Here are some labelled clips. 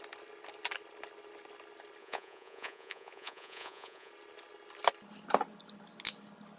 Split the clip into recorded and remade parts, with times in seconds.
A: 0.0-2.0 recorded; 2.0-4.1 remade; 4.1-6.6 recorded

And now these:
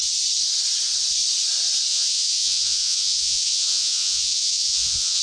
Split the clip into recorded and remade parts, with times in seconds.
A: 0.0-1.9 recorded; 1.9-5.2 remade

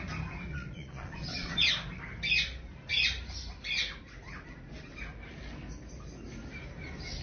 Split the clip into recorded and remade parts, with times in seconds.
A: 0.0-0.5 recorded; 0.5-1.7 remade; 1.7-7.2 recorded